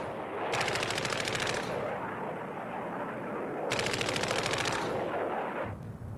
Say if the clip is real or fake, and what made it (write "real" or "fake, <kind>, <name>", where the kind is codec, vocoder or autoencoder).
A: real